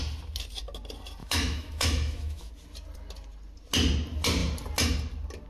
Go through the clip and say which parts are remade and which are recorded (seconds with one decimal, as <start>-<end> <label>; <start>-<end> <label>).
0.0-1.2 recorded; 1.2-2.5 remade; 2.5-5.5 recorded